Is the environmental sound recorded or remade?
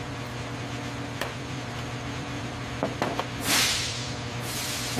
remade